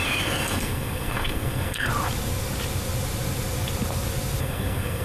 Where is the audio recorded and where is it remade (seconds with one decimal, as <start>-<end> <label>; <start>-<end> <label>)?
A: 0.0-1.9 remade; 1.9-4.4 recorded; 4.4-5.0 remade